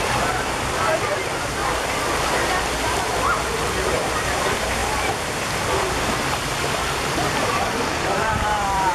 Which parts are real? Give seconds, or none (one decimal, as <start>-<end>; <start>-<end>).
1.6-3.0

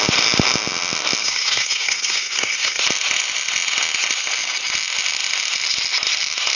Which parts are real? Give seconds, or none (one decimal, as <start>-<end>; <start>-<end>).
0.0-1.2; 2.8-6.6

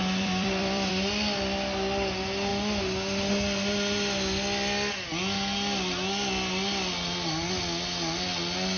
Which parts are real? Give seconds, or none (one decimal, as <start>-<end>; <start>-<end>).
0.9-8.8

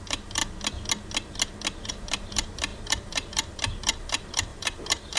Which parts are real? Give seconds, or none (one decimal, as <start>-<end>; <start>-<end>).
0.4-1.9

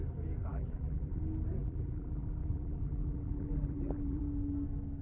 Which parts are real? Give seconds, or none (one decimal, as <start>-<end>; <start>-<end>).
0.0-0.5; 1.2-1.6; 4.2-5.0